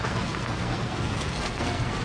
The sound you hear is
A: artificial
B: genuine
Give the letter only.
A